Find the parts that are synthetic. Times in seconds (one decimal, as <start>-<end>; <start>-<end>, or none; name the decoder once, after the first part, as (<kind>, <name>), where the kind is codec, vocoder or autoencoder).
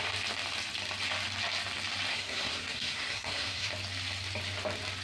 2.1-3.7 (codec, SNAC)